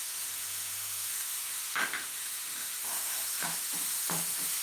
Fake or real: fake